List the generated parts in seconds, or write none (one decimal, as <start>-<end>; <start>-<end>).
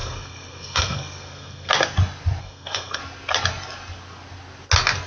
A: 0.0-1.7; 2.4-3.0